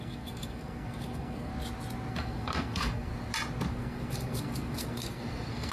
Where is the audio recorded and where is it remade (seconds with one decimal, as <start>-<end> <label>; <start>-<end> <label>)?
0.0-1.5 remade; 1.5-2.1 recorded; 2.1-3.1 remade; 3.1-3.7 recorded; 3.7-5.7 remade